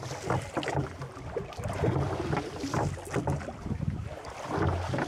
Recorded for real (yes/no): yes